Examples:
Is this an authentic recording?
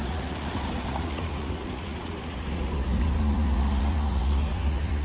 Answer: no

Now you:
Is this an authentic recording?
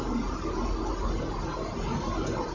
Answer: yes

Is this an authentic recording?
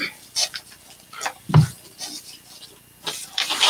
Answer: yes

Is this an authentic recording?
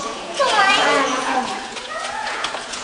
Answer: no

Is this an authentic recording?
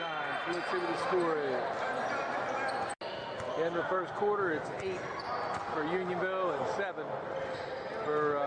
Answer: yes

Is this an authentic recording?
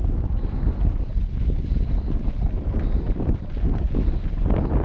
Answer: yes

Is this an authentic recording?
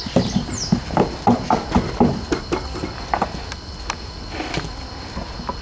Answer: yes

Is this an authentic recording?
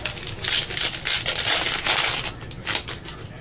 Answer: yes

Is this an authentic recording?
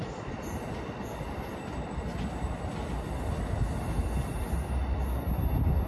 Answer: yes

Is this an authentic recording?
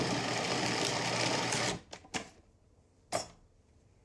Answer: yes